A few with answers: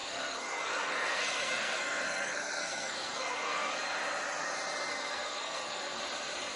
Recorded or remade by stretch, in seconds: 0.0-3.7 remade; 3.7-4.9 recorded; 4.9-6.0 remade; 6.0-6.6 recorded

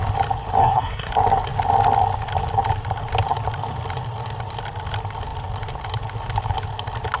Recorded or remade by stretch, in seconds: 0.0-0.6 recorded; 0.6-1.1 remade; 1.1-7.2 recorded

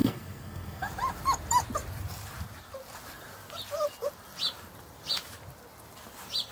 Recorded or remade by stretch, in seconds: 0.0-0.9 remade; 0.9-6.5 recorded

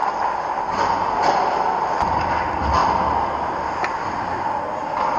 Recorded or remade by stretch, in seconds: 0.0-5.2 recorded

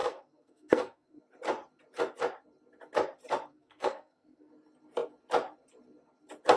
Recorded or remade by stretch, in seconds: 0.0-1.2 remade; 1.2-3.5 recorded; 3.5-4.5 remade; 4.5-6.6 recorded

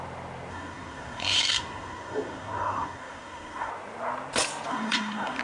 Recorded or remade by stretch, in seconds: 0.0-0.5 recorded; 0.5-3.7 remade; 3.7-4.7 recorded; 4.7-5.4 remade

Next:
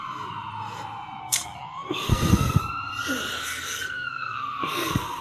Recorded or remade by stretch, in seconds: 0.0-1.2 recorded; 1.2-2.6 remade; 2.6-3.3 recorded; 3.3-5.2 remade

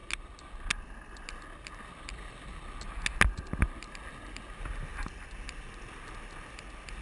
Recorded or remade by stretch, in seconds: 0.0-7.0 recorded